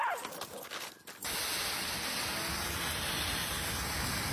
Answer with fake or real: real